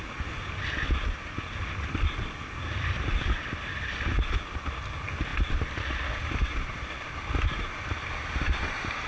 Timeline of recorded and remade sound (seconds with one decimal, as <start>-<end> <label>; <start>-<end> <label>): 0.0-9.1 recorded